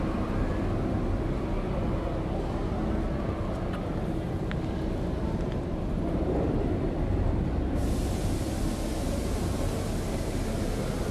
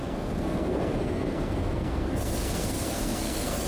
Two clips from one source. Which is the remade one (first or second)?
second